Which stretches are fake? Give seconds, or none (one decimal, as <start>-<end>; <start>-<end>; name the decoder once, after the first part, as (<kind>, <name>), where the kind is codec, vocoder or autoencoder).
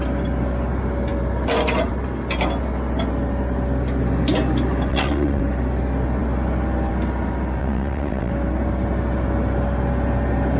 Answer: 4.9-5.4 (vocoder, WaveNeXt); 7.6-8.3